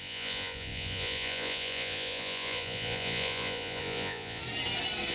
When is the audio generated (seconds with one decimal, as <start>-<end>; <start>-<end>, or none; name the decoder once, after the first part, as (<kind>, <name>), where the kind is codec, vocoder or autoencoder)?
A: 0.0-4.4 (vocoder, Vocos)